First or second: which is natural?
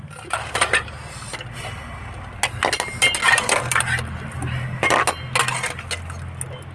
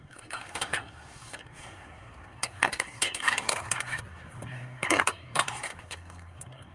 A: first